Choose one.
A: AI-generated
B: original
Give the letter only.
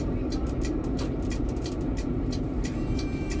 A